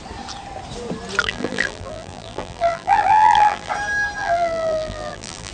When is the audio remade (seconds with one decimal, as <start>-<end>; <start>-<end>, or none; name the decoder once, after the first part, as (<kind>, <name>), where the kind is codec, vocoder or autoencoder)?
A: 1.2-3.7 (vocoder, BigVGAN v2); 4.2-5.5